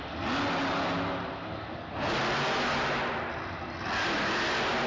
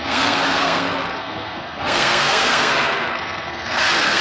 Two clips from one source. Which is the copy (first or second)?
second